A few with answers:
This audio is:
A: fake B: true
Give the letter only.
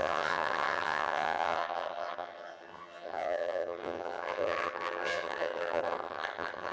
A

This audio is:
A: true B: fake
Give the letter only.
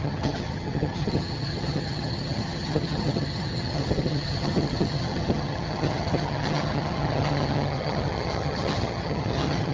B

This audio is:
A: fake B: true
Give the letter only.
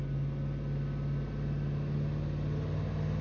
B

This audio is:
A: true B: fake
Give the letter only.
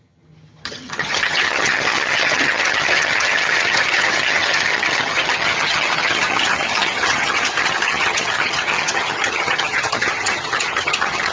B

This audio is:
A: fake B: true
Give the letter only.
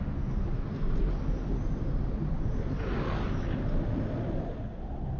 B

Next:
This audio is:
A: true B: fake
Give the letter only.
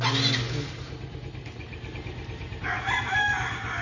A